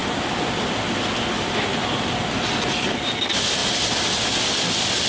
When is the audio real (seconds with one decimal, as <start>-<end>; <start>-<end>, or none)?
0.0-5.1